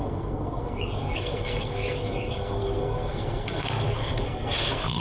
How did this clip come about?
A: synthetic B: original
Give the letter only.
A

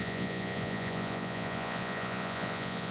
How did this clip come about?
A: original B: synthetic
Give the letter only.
B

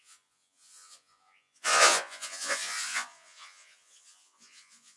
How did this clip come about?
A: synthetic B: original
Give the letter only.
A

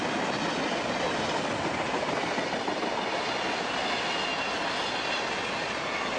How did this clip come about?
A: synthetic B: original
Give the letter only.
B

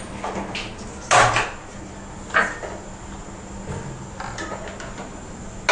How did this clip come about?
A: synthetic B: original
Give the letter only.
B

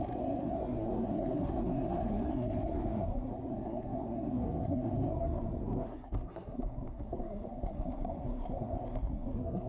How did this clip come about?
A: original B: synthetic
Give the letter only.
B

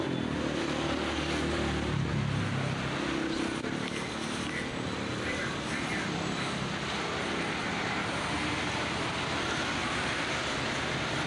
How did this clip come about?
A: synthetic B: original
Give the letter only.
B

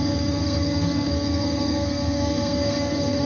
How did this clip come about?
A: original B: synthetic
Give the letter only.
B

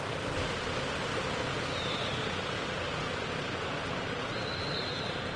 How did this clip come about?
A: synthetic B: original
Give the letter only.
B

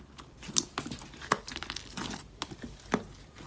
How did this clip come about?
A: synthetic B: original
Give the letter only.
B